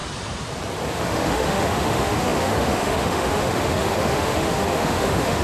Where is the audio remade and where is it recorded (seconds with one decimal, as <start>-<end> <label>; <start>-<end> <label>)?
0.0-0.9 recorded; 0.9-5.4 remade